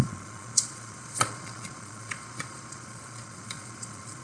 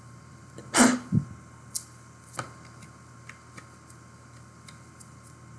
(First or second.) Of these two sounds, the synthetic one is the first